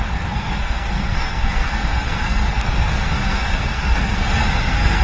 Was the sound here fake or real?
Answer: fake